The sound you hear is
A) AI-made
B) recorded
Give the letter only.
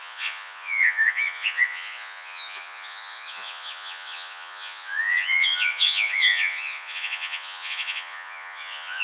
A